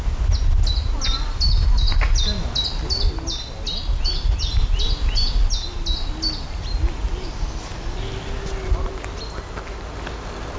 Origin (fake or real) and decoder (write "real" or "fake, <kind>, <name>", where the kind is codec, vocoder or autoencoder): real